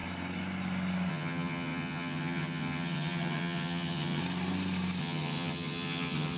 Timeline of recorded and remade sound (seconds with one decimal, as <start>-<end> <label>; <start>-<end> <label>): 0.0-1.1 recorded; 1.1-4.2 remade; 4.2-5.0 recorded; 5.0-6.4 remade